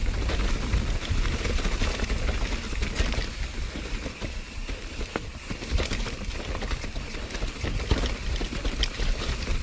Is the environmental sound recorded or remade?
recorded